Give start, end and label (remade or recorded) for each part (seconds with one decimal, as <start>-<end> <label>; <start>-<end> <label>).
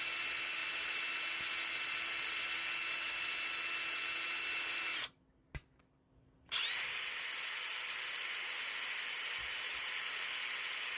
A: 0.0-11.0 recorded